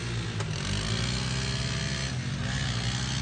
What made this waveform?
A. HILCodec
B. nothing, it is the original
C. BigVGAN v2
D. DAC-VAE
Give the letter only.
B